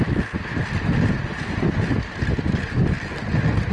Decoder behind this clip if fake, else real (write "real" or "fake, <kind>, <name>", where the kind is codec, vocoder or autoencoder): real